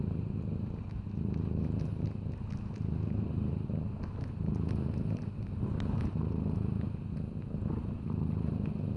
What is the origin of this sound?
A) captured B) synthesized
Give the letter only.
A